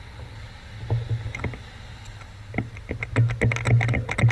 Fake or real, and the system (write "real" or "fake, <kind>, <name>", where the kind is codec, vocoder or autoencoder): real